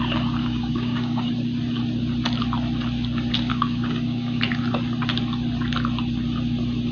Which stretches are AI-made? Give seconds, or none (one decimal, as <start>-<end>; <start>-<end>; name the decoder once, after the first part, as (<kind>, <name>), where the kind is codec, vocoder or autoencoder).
0.4-1.3 (codec, DAC); 3.5-4.4